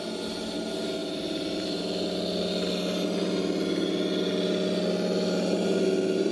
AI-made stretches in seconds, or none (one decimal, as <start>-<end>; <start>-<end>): 1.0-1.8